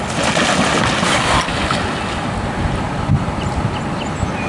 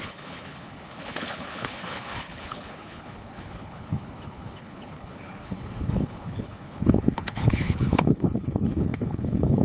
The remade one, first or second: second